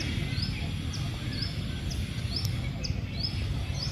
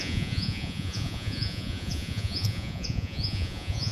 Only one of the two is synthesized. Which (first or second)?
second